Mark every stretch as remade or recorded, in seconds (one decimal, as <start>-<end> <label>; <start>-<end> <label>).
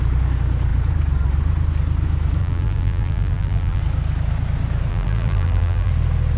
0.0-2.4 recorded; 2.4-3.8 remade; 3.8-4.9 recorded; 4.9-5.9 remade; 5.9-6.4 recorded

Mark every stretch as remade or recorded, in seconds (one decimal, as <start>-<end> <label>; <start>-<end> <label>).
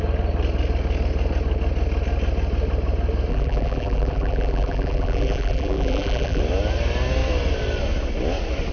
0.0-3.3 recorded; 3.3-6.4 remade; 6.4-8.7 recorded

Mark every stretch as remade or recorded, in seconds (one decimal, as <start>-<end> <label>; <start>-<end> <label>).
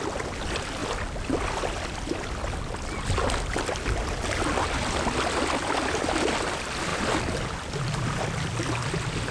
0.0-9.3 recorded